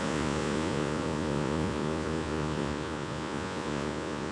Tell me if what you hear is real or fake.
fake